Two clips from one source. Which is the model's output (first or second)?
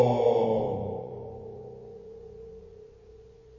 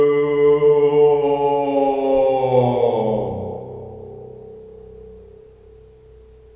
first